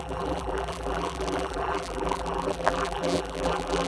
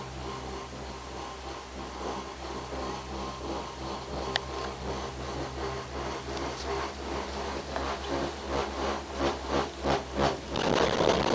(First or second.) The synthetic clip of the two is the first